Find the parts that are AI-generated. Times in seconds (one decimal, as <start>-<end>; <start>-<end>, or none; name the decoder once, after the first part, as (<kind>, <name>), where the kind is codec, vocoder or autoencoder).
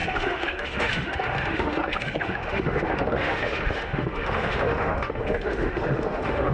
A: 0.0-6.5 (autoencoder, DAC-VAE)